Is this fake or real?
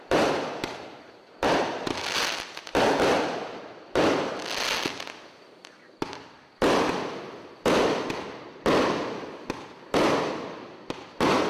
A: real